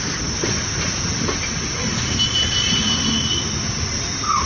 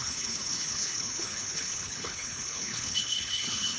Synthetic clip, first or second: second